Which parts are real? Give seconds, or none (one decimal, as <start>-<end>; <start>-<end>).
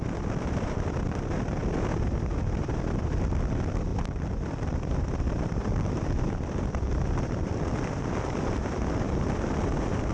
none